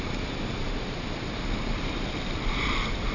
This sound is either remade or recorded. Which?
recorded